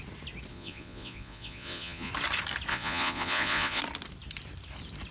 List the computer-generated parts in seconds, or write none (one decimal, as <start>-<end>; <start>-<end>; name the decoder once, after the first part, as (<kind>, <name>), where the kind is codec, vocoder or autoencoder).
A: 0.5-2.1 (vocoder, Vocos); 2.7-3.8